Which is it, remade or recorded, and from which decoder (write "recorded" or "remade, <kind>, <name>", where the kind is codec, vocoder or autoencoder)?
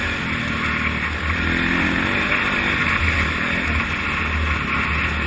recorded